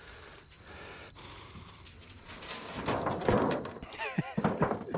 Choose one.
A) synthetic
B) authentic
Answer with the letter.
B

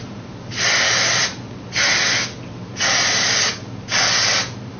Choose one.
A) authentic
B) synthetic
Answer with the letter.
A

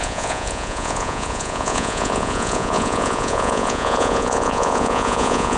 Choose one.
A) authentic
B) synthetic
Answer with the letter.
B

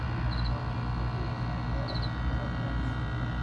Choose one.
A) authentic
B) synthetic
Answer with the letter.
A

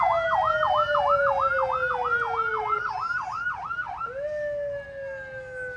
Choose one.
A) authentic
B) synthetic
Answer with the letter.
A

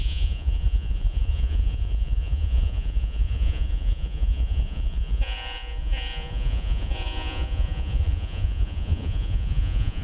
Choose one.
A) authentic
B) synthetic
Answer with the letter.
B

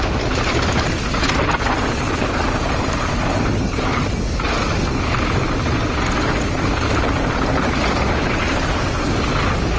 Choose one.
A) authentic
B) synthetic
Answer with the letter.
A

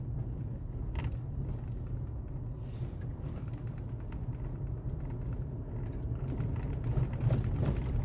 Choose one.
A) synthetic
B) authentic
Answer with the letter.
B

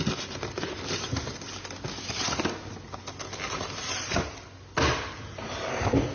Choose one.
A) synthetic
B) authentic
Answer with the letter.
B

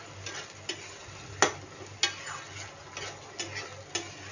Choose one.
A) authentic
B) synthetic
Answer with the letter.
A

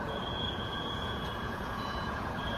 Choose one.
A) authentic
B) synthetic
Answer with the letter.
B